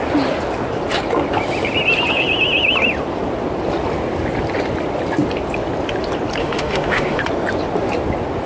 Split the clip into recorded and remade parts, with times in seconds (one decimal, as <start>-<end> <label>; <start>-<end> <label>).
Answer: 0.0-6.4 recorded; 6.4-7.2 remade; 7.2-8.5 recorded